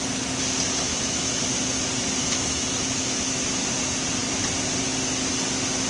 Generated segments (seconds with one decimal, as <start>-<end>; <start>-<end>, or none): 0.9-1.4; 2.2-3.3